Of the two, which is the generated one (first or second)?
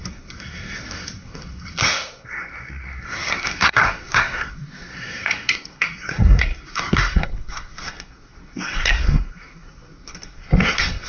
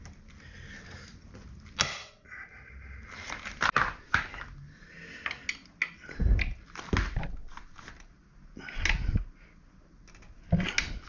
first